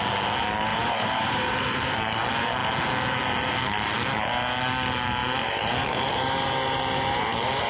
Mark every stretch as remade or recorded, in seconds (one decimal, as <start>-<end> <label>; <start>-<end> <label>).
0.0-0.7 recorded; 0.7-2.0 remade; 2.0-5.2 recorded; 5.2-7.7 remade